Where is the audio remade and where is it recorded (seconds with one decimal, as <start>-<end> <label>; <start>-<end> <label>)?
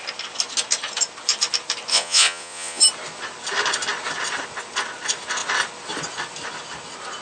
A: 0.0-1.9 recorded; 1.9-2.8 remade; 2.8-7.2 recorded